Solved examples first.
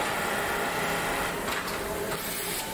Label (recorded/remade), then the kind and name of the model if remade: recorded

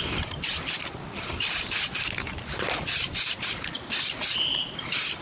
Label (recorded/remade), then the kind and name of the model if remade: remade, vocoder, BigVGAN v2